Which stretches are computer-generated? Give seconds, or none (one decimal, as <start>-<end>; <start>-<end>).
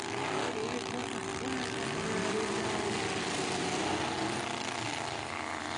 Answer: none